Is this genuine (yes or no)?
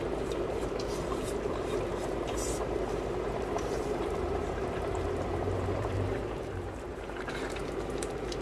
no